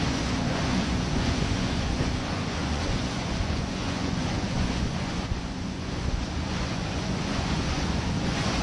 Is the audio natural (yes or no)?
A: no